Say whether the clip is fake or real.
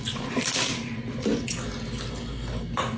real